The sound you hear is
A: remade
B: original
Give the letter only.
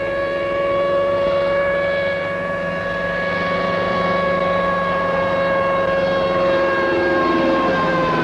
B